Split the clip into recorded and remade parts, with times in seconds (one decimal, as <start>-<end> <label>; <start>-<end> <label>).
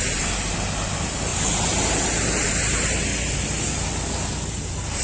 0.0-3.1 recorded; 3.1-3.7 remade; 3.7-5.0 recorded